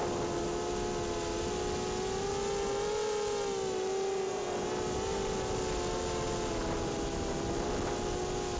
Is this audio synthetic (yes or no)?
no